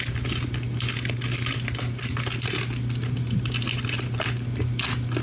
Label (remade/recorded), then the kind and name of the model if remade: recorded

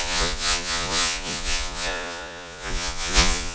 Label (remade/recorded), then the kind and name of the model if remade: remade, vocoder, Vocos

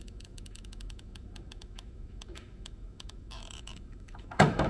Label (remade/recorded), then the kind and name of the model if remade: remade, autoencoder, DAC-VAE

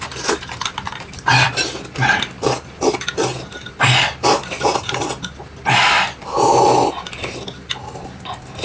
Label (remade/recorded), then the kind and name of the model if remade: recorded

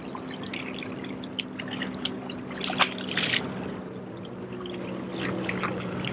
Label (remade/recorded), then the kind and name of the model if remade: recorded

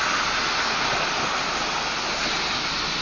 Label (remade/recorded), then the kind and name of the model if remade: recorded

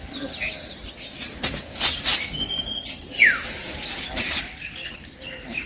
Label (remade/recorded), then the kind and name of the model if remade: recorded